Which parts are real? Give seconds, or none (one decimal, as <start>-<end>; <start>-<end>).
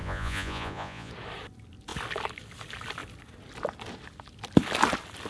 1.1-5.3